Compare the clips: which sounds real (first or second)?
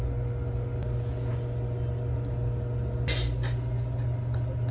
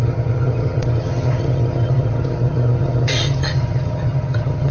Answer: first